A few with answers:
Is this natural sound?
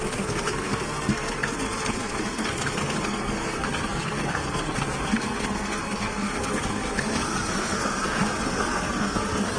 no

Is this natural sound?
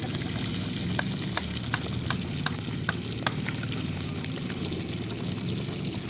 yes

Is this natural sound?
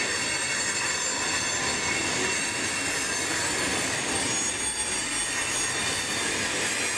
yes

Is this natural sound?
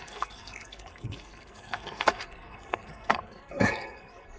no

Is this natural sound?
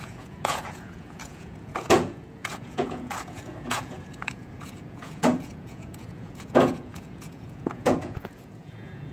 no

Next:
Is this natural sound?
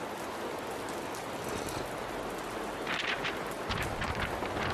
yes